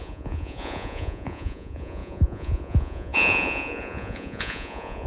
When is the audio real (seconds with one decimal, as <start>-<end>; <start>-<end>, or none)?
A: none